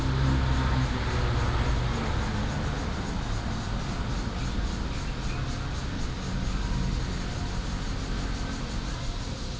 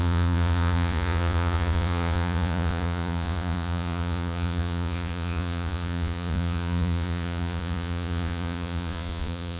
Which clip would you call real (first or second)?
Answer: first